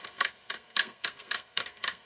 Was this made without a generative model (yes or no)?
no